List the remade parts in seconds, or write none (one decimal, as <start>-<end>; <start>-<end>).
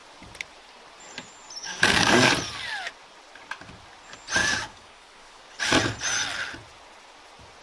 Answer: 1.6-2.3; 4.4-5.6